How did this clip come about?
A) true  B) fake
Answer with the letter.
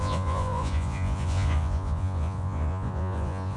B